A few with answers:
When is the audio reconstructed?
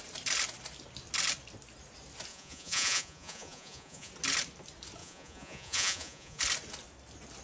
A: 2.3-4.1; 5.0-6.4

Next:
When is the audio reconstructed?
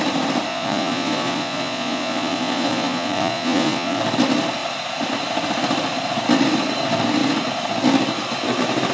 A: 0.5-4.0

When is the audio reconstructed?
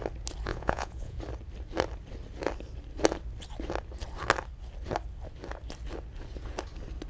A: 0.5-1.2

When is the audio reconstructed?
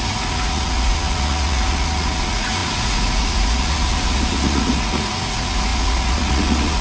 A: 0.0-6.8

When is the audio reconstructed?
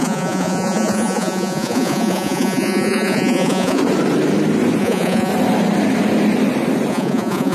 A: 0.0-3.8; 4.8-5.3; 6.9-7.5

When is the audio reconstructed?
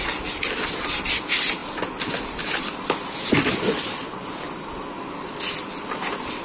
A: none